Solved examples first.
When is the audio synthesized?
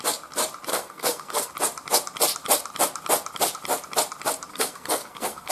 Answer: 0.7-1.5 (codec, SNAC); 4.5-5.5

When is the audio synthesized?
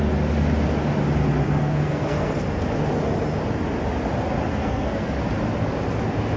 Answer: 1.4-2.3 (codec, SNAC); 4.5-5.1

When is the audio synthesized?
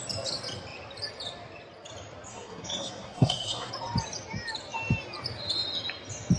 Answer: 2.3-3.7 (codec, SNAC)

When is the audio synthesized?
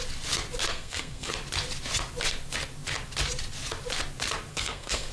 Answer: 0.7-1.3 (codec, SNAC); 4.5-5.1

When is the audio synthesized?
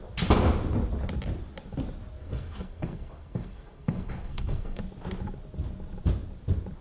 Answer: 2.2-4.8 (codec, SNAC)